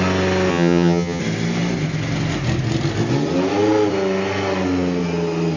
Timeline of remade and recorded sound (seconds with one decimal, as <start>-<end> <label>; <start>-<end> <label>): 0.0-0.5 recorded; 0.5-1.2 remade; 1.2-5.6 recorded